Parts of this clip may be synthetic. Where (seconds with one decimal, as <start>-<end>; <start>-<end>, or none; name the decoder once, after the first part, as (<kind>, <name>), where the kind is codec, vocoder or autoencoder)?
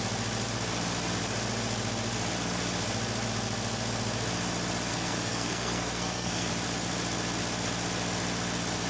4.9-6.5 (codec, SNAC)